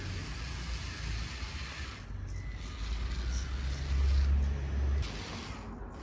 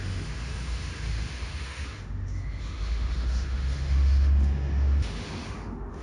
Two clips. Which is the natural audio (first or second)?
first